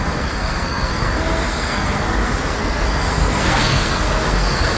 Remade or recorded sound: remade